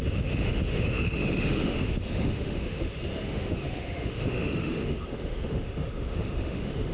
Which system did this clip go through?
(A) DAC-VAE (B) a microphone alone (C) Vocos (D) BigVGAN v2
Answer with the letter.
A